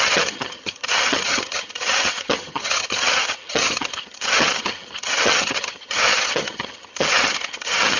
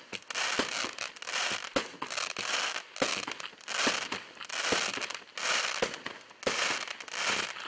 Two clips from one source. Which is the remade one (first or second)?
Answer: first